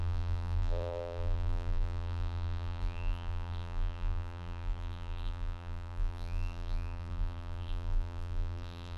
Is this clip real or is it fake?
fake